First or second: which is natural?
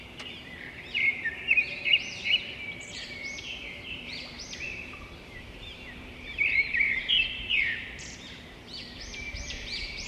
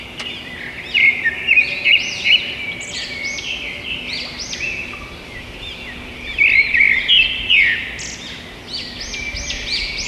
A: second